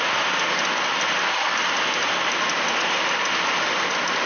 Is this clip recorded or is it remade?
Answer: recorded